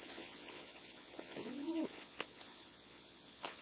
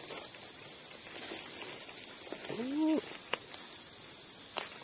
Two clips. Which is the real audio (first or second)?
second